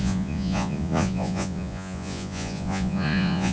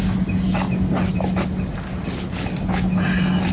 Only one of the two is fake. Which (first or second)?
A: first